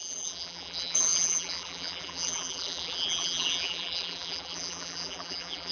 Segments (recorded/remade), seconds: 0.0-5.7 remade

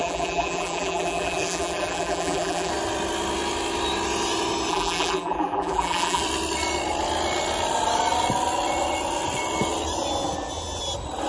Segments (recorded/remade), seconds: 0.0-2.7 remade; 2.7-4.7 recorded; 4.7-6.2 remade; 6.2-11.3 recorded

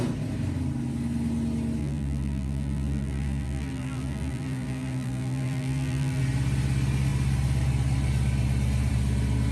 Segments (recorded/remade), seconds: 0.0-1.8 recorded; 1.8-6.2 remade; 6.2-9.5 recorded

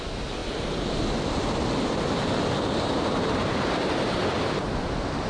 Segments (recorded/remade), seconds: 0.0-0.4 remade; 0.4-2.7 recorded; 2.7-4.2 remade; 4.2-5.3 recorded

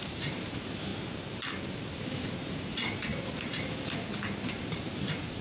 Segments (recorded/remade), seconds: 0.0-0.9 remade; 0.9-2.0 recorded; 2.0-3.1 remade; 3.1-4.4 recorded; 4.4-5.4 remade

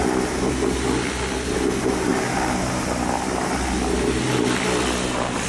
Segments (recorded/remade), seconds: 0.0-5.5 recorded

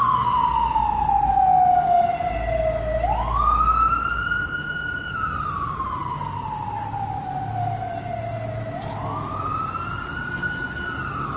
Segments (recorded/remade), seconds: 0.0-11.4 recorded